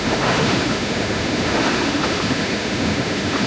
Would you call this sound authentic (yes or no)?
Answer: no